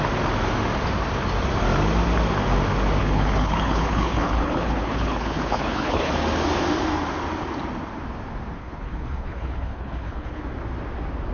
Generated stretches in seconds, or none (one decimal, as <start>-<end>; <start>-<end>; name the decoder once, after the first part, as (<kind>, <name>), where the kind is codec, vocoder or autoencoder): 3.0-6.1 (codec, HILCodec); 8.6-10.4